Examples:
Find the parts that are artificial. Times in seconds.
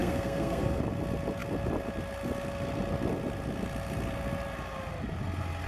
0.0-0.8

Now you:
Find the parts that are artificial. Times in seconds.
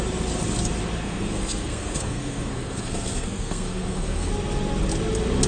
1.0-4.3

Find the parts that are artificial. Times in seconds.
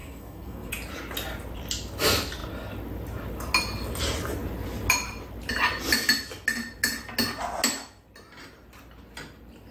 0.0-0.7